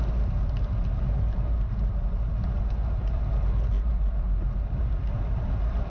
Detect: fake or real real